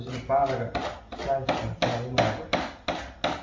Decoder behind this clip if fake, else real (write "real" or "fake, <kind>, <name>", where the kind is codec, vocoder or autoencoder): real